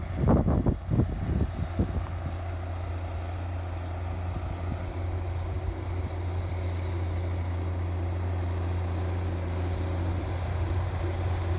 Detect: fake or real real